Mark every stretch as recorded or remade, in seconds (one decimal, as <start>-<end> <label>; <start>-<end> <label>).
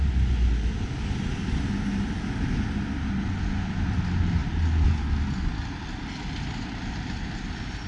0.0-7.9 recorded